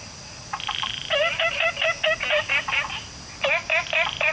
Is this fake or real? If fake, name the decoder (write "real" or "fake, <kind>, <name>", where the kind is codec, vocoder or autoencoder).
real